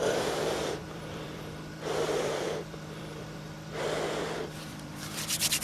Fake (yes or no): yes